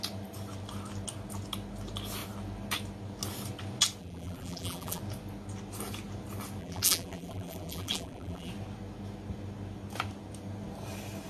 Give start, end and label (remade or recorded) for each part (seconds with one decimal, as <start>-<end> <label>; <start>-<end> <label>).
0.0-4.0 recorded; 4.0-5.0 remade; 5.0-6.6 recorded; 6.6-8.5 remade; 8.5-11.3 recorded